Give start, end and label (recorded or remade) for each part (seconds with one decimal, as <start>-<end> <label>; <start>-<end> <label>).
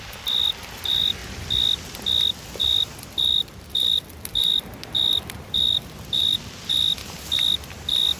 0.0-1.2 remade; 1.2-2.6 recorded; 2.6-7.0 remade; 7.0-8.2 recorded